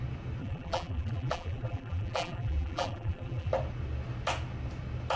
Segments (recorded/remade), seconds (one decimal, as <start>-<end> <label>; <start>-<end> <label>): 0.0-0.4 recorded; 0.4-3.5 remade; 3.5-5.2 recorded